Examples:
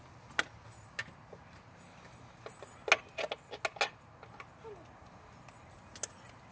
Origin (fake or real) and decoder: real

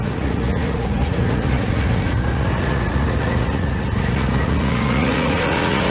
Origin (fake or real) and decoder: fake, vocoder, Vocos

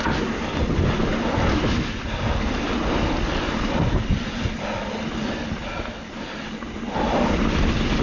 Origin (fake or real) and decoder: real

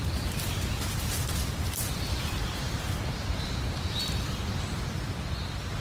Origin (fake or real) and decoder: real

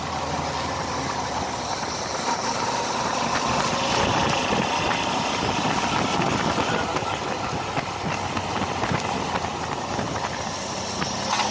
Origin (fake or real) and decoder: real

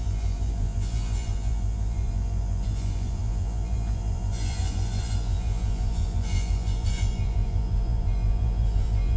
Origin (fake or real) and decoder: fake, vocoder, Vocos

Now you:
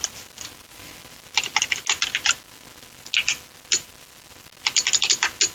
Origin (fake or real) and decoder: real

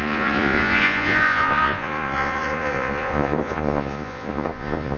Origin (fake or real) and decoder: fake, vocoder, Vocos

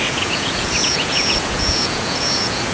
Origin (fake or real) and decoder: fake, vocoder, Vocos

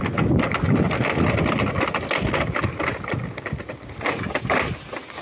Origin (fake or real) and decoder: real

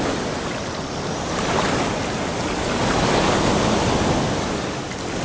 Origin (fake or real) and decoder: real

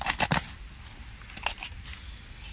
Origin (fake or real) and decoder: real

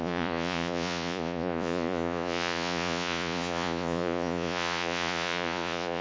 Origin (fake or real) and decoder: fake, vocoder, Vocos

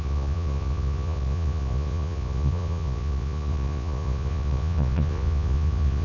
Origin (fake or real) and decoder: fake, vocoder, Vocos